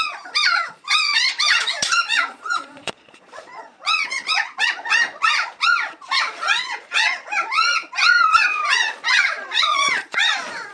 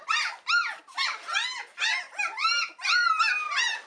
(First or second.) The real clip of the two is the second